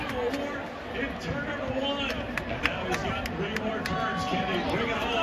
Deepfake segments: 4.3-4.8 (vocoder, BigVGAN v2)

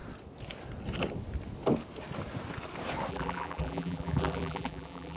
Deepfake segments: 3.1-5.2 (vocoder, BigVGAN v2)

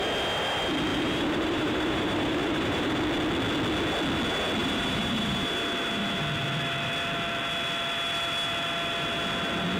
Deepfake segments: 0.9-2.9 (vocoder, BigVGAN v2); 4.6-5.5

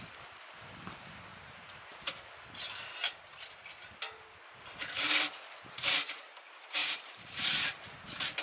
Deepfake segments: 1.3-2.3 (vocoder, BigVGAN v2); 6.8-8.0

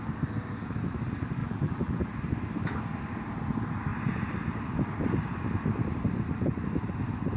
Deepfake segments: 1.4-2.1 (vocoder, BigVGAN v2)

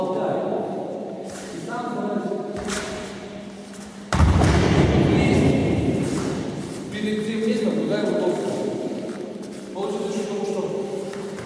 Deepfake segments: 0.5-4.5 (vocoder, BigVGAN v2); 5.6-6.2; 8.0-11.5